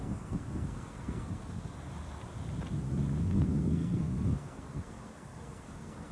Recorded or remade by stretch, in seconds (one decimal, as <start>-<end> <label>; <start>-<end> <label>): 0.0-1.9 remade; 1.9-3.2 recorded; 3.2-6.1 remade